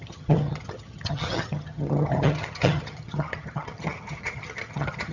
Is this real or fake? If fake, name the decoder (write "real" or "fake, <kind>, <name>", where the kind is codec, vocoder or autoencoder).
fake, vocoder, HiFi-GAN